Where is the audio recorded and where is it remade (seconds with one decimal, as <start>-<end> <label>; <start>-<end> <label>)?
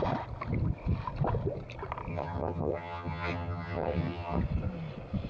0.0-2.1 recorded; 2.1-4.4 remade; 4.4-5.3 recorded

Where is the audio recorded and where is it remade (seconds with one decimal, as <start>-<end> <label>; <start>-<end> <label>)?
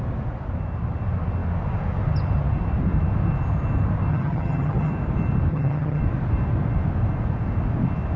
0.0-4.1 recorded; 4.1-4.9 remade; 4.9-5.5 recorded; 5.5-6.0 remade; 6.0-8.2 recorded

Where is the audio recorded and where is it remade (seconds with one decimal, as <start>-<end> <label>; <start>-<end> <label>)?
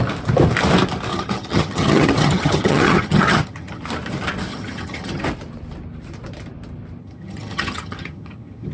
0.0-1.1 recorded; 1.1-3.8 remade; 3.8-4.5 recorded; 4.5-5.2 remade; 5.2-7.0 recorded; 7.0-8.7 remade